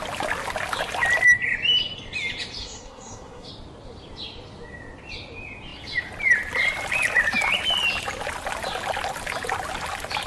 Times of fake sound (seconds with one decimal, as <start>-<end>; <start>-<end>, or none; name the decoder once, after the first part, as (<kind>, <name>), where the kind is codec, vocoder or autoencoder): 2.6-3.5 (codec, SNAC)